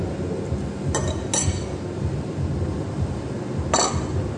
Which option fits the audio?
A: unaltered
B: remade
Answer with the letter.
A